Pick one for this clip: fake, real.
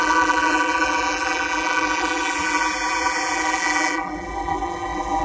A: fake